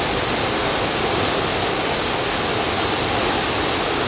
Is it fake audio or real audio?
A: real